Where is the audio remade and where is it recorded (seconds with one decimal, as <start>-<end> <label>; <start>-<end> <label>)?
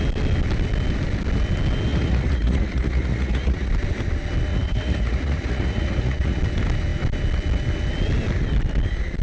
0.0-1.9 recorded; 1.9-3.7 remade; 3.7-4.5 recorded; 4.5-6.4 remade; 6.4-9.2 recorded